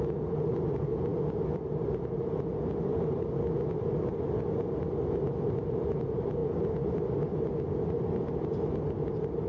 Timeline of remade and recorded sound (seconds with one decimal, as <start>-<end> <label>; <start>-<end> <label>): 0.0-9.5 recorded